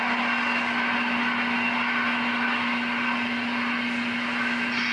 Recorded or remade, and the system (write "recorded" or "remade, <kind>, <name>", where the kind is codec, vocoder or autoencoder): recorded